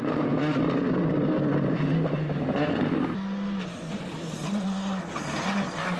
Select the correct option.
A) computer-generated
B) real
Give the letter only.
B